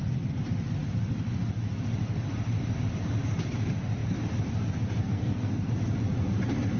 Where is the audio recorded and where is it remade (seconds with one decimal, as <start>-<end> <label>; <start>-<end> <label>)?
0.0-5.0 recorded; 5.0-5.7 remade; 5.7-6.8 recorded